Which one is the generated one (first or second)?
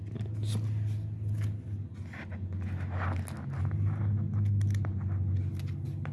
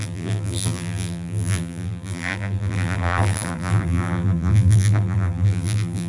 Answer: second